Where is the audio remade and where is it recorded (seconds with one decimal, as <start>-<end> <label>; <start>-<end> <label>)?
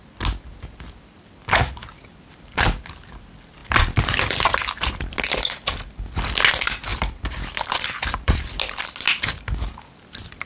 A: 0.0-6.9 recorded; 6.9-8.8 remade; 8.8-10.5 recorded